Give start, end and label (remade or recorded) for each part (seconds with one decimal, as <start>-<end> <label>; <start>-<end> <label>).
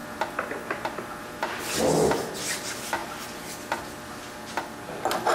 0.0-1.2 remade; 1.2-3.0 recorded; 3.0-4.5 remade; 4.5-5.3 recorded